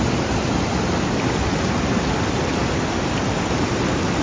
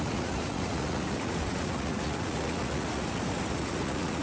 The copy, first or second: second